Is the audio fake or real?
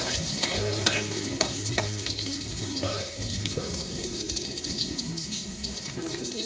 fake